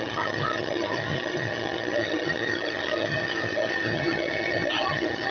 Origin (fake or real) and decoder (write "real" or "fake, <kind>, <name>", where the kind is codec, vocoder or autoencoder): fake, vocoder, HiFi-GAN